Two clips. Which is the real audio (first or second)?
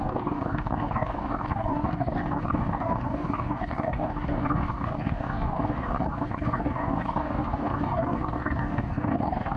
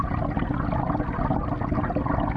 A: second